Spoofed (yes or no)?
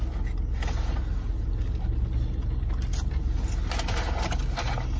no